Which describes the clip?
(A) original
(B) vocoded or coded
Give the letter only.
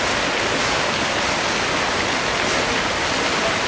A